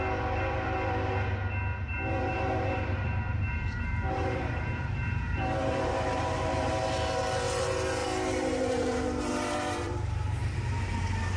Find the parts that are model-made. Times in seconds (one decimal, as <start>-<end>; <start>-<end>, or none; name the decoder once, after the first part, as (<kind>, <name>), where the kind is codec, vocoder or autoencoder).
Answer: 1.9-6.7 (vocoder, BigVGAN v2); 8.0-10.6